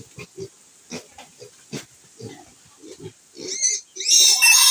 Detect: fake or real real